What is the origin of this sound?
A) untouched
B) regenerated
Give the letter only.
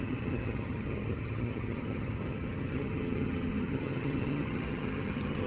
B